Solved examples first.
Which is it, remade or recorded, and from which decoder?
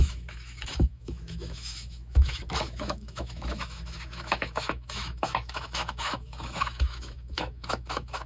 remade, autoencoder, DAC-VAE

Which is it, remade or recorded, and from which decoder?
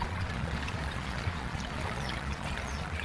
remade, vocoder, Vocos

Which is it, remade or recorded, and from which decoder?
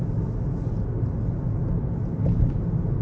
recorded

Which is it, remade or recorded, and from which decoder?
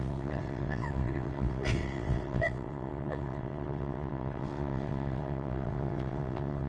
remade, vocoder, WaveNeXt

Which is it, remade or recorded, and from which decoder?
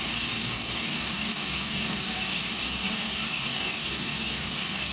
remade, codec, DAC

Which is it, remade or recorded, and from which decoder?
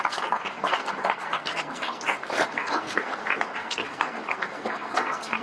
remade, codec, SNAC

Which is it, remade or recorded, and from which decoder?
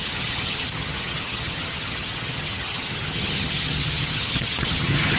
remade, vocoder, HiFi-GAN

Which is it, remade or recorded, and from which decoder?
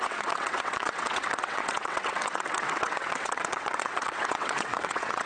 remade, vocoder, WaveNeXt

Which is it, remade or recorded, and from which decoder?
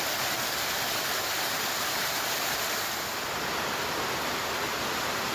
recorded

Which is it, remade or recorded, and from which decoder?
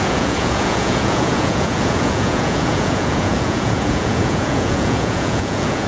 remade, vocoder, Vocos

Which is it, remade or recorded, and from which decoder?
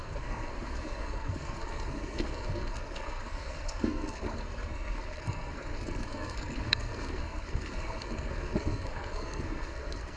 remade, codec, SNAC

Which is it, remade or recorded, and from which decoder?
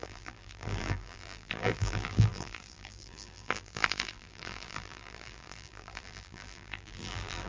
remade, vocoder, BigVGAN v2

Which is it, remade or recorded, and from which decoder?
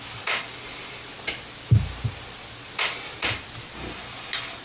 recorded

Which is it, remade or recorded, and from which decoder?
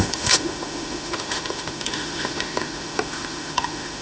remade, autoencoder, DAC-VAE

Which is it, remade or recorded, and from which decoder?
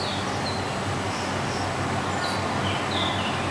recorded